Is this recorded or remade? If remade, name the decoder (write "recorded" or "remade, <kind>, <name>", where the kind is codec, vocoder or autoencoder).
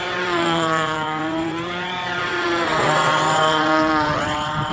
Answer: remade, vocoder, WaveNeXt